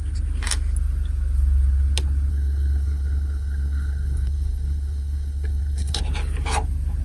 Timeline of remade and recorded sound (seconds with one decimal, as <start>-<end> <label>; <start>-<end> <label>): 0.0-2.3 recorded; 2.3-6.0 remade; 6.0-7.0 recorded